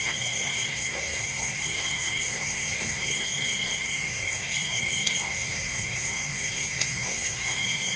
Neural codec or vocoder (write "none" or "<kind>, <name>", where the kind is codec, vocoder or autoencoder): codec, SNAC